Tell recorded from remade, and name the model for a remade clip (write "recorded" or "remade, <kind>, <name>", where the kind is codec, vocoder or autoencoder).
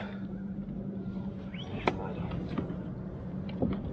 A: remade, vocoder, BigVGAN v2